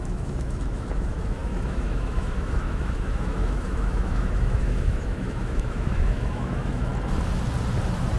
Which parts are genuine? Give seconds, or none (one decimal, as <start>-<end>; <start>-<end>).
6.9-8.2